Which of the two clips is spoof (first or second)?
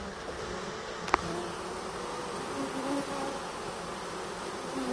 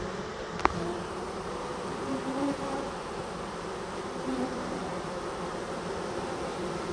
second